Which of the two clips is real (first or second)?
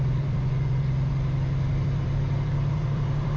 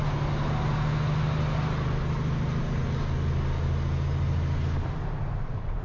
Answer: second